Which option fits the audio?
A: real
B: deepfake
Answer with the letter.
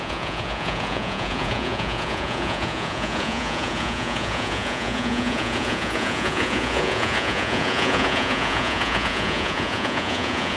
B